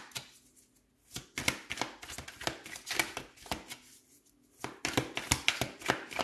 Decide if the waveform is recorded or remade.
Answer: recorded